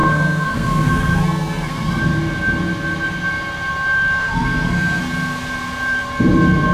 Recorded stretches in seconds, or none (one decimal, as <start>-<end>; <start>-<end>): 2.0-4.2; 5.0-6.7